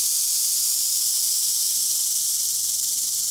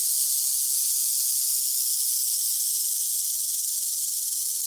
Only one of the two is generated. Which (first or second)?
first